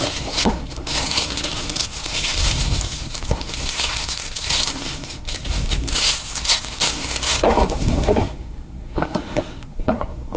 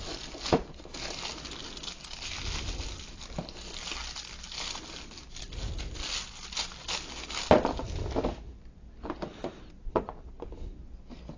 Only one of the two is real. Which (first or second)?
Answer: second